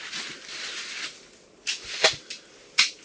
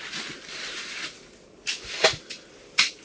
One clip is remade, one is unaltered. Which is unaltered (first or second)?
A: first